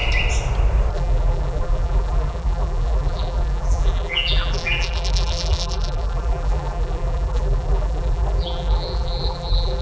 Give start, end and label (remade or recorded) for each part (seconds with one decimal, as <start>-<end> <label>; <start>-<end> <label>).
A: 0.0-0.9 recorded; 0.9-9.8 remade